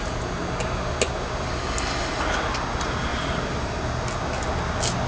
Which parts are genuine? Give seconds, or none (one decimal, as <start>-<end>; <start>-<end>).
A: 0.0-3.1; 3.8-5.1